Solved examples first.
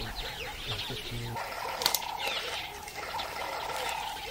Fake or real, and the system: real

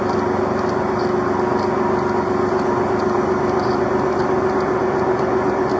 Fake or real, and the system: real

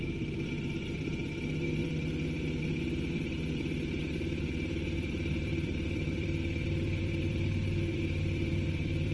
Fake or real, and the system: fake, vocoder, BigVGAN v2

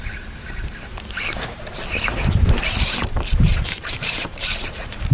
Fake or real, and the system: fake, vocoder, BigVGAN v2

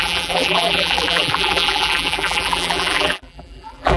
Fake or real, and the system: fake, vocoder, BigVGAN v2